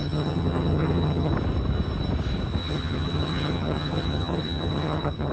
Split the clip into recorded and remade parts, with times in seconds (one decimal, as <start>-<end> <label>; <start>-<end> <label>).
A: 0.0-1.3 remade; 1.3-2.6 recorded; 2.6-5.3 remade